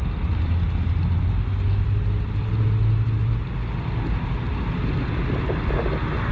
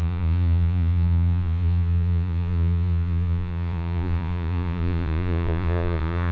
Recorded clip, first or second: first